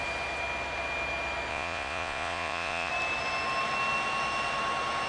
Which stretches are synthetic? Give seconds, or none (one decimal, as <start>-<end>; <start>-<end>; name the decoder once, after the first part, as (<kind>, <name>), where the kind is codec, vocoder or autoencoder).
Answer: 1.5-2.9 (vocoder, Vocos)